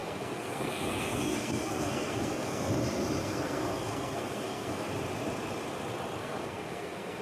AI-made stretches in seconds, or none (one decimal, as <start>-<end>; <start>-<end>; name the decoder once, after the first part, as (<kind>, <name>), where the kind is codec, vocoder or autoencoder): 0.0-2.7 (codec, SNAC); 3.2-4.9; 6.2-7.2